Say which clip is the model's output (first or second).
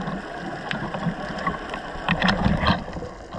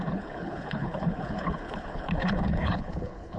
second